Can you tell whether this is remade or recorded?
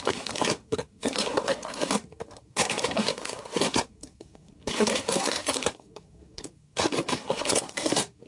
remade